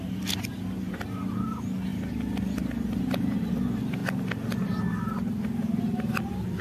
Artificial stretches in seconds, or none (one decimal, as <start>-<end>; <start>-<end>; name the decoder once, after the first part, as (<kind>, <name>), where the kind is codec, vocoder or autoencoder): none